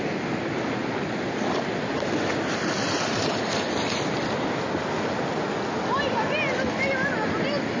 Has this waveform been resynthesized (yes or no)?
no